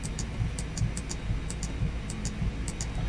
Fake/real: real